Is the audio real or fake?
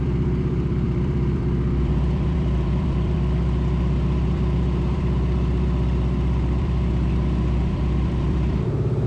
fake